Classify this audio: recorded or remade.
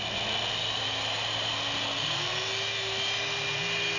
recorded